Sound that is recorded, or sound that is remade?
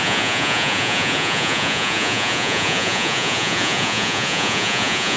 remade